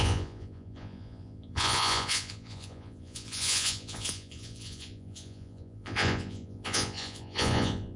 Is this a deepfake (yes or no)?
yes